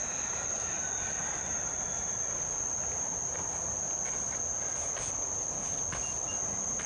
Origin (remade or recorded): recorded